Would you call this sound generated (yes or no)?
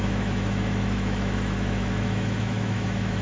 yes